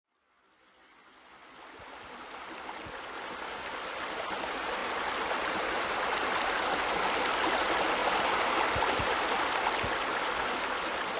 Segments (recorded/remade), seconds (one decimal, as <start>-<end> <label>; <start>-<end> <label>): 0.0-11.2 recorded